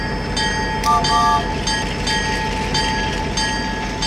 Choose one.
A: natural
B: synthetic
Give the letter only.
A